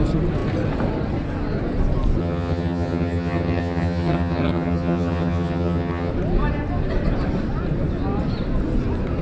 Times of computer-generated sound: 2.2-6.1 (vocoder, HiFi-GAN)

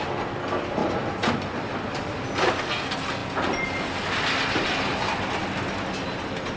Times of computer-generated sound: none

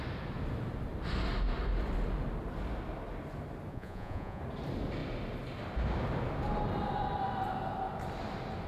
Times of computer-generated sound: 3.7-4.4 (vocoder, Vocos)

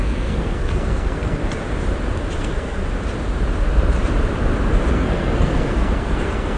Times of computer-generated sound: 0.0-1.4 (codec, SNAC); 2.4-2.8; 4.9-6.6

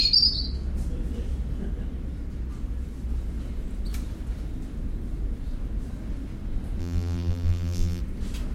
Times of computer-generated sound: 6.8-8.0 (vocoder, BigVGAN v2)